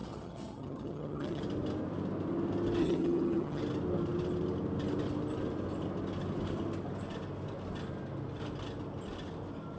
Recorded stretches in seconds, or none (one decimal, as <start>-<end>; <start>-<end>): 1.4-2.8; 3.6-9.8